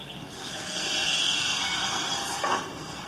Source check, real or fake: fake